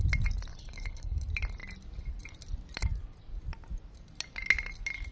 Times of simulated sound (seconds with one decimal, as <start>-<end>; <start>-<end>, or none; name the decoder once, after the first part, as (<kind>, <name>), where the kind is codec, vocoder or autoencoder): 0.5-1.2 (codec, HILCodec)